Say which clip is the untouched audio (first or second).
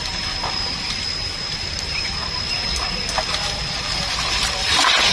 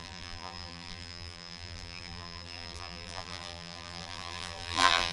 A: first